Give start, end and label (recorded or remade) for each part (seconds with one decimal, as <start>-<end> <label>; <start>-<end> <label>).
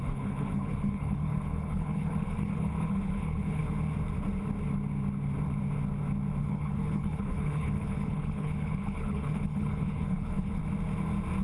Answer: 0.0-3.6 remade; 3.6-6.4 recorded; 6.4-10.6 remade; 10.6-11.4 recorded